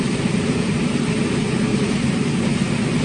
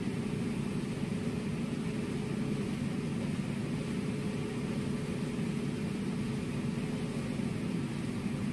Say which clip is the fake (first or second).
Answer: first